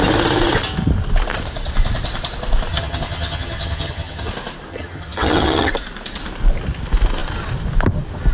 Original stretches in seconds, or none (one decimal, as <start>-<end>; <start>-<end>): 0.0-2.7; 4.3-4.7; 5.7-8.3

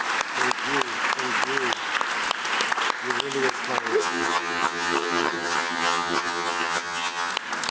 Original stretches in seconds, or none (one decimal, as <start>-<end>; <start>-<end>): 0.0-4.0; 7.3-7.7